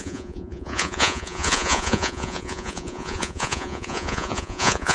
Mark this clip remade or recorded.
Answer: remade